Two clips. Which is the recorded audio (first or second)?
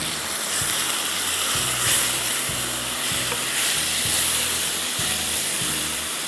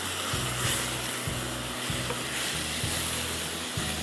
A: second